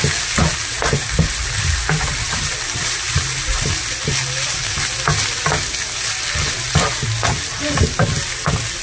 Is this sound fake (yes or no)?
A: no